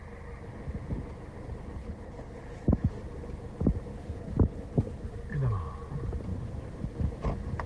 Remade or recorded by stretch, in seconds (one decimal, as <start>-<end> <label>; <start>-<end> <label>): 0.0-1.8 recorded; 1.8-2.9 remade; 2.9-3.9 recorded; 3.9-5.1 remade; 5.1-7.7 recorded